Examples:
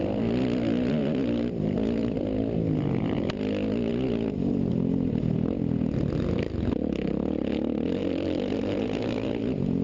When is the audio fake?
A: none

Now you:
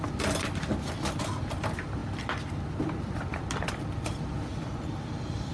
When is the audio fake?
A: none

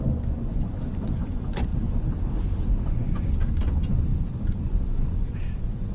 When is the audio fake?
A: 0.0-1.7 (vocoder, Vocos); 2.7-5.9

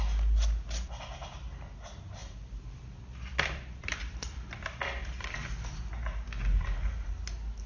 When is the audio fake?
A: 1.2-1.7 (vocoder, BigVGAN v2); 2.2-5.9